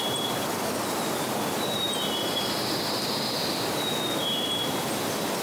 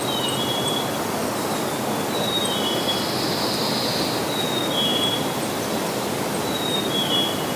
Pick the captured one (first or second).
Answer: second